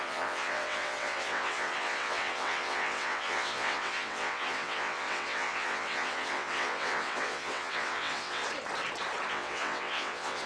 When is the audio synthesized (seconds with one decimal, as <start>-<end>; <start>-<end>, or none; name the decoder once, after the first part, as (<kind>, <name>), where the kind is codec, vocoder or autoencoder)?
0.0-8.4 (vocoder, WaveNeXt); 9.3-10.5